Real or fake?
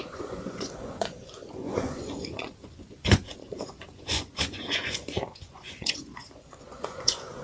fake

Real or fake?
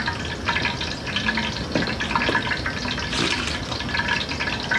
real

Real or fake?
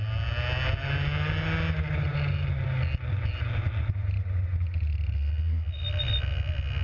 real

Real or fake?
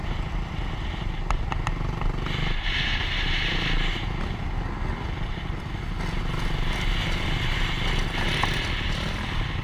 real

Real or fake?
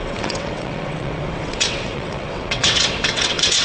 fake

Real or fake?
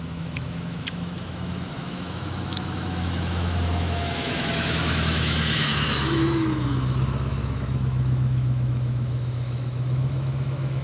fake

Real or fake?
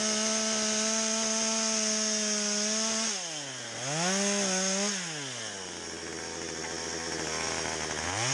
real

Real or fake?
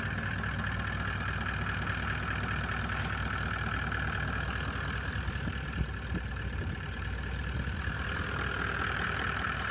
real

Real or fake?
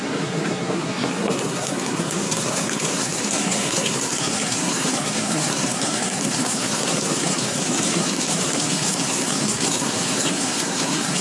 fake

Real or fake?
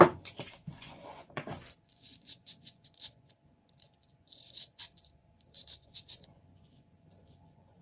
fake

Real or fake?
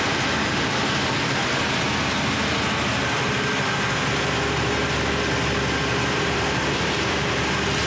real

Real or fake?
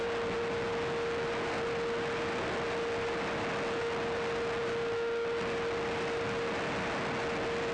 real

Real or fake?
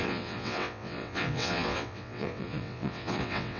fake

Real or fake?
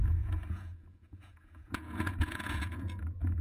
fake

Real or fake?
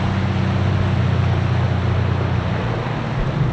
real